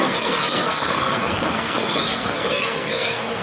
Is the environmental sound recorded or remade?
remade